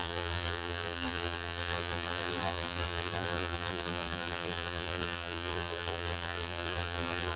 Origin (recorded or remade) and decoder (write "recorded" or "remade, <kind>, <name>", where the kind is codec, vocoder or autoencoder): remade, vocoder, BigVGAN v2